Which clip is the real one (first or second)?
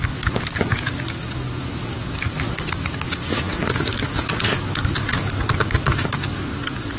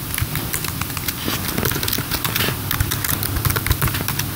second